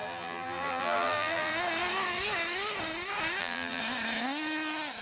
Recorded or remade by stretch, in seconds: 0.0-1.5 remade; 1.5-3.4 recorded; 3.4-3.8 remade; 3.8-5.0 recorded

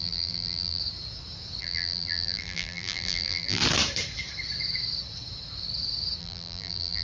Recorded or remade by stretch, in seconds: 0.0-0.8 remade; 0.8-1.6 recorded; 1.6-3.6 remade; 3.6-6.2 recorded; 6.2-7.0 remade

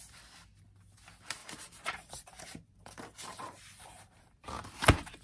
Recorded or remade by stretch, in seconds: 0.0-1.4 recorded; 1.4-4.5 remade; 4.5-5.2 recorded

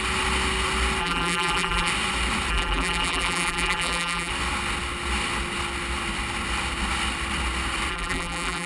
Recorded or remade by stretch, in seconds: 0.0-1.0 recorded; 1.0-1.9 remade; 1.9-2.5 recorded; 2.5-4.3 remade; 4.3-7.9 recorded; 7.9-8.7 remade